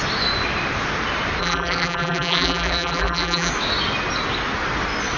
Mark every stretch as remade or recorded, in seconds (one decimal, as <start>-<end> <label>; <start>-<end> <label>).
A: 0.0-1.4 recorded; 1.4-3.5 remade; 3.5-5.2 recorded